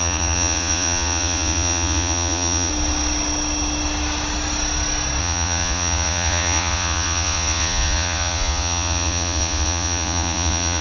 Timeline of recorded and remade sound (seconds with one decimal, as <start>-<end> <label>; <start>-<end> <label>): 0.0-2.7 remade; 2.7-5.2 recorded; 5.2-10.8 remade